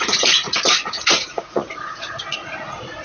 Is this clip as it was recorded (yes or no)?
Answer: no